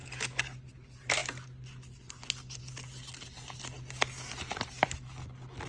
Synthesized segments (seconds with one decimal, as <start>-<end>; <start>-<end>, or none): none

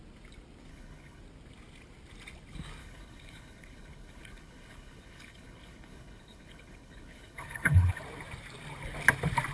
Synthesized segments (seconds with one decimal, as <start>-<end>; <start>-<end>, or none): 0.7-1.2; 2.8-8.0

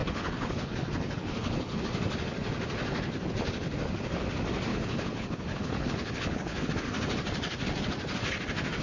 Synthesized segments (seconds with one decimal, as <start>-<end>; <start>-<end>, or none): 0.0-1.8; 4.7-6.7

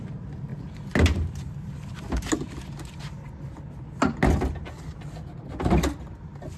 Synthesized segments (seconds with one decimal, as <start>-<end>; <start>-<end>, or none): none

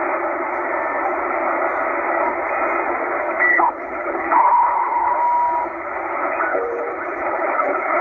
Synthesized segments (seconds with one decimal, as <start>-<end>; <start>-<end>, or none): 3.5-5.2; 6.5-8.0

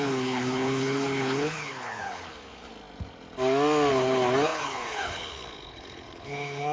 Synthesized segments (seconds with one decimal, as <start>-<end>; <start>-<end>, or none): 0.0-2.7; 3.9-6.7